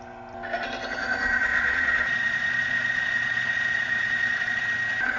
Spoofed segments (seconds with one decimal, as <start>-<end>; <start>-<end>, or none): 1.5-4.6